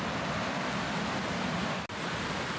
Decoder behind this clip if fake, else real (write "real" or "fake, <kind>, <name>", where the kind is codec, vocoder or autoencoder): real